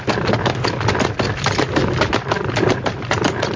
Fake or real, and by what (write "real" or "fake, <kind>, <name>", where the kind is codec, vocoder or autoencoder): real